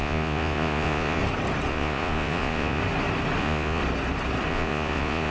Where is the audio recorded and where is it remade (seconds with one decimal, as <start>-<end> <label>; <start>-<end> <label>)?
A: 0.0-1.2 remade; 1.2-1.7 recorded; 1.7-2.8 remade; 2.8-3.4 recorded; 3.4-3.8 remade; 3.8-4.5 recorded; 4.5-5.3 remade